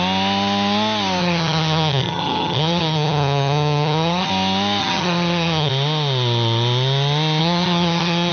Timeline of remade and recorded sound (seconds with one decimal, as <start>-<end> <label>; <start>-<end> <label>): 0.0-1.2 recorded; 1.2-4.3 remade; 4.3-4.8 recorded; 4.8-5.7 remade; 5.7-7.4 recorded; 7.4-8.3 remade